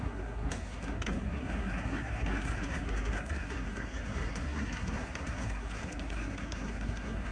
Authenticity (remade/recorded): remade